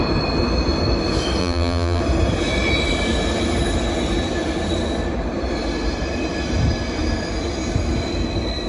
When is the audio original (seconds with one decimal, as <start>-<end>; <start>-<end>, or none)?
0.0-1.4; 2.0-8.7